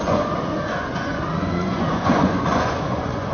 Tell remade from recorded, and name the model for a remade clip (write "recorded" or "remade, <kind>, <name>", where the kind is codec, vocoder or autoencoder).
remade, vocoder, Vocos